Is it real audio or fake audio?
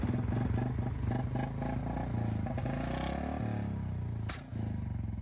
real